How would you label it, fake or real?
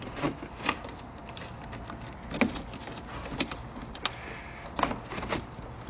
real